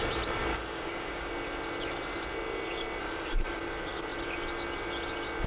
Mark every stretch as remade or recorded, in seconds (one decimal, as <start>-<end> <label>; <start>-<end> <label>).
0.0-0.5 recorded; 0.5-1.3 remade; 1.3-3.0 recorded; 3.0-3.6 remade; 3.6-5.5 recorded